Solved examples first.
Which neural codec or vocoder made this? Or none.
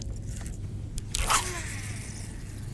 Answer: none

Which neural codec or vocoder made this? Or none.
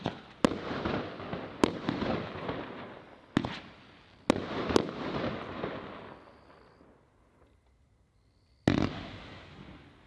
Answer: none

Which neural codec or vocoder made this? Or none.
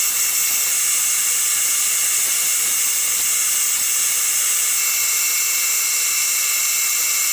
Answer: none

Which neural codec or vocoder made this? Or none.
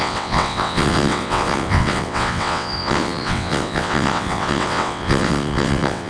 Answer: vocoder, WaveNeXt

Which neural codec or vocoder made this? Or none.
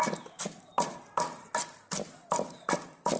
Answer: none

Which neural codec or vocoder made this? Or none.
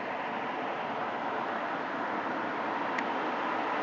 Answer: none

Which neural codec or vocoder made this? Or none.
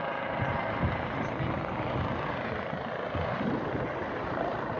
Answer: none